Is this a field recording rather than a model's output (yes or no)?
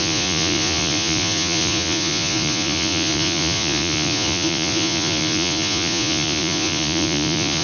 no